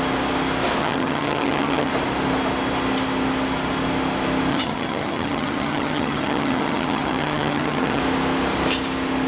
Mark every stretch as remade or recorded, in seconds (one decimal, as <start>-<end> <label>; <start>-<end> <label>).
0.0-0.8 recorded; 0.8-1.9 remade; 1.9-4.5 recorded; 4.5-8.0 remade; 8.0-9.3 recorded